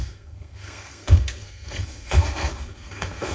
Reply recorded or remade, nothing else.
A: remade